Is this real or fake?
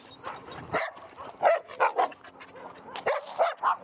real